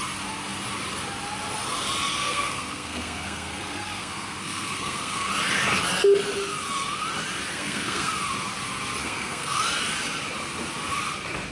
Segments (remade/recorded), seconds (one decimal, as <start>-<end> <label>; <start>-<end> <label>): 0.0-2.2 recorded; 2.2-5.3 remade; 5.3-7.5 recorded; 7.5-8.1 remade; 8.1-9.0 recorded; 9.0-9.6 remade; 9.6-11.5 recorded